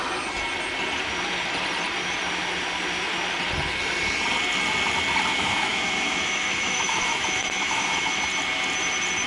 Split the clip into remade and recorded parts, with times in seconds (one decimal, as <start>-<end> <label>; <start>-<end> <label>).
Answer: 0.0-5.3 recorded; 5.3-8.2 remade; 8.2-9.3 recorded